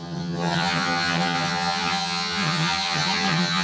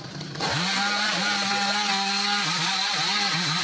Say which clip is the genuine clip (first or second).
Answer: second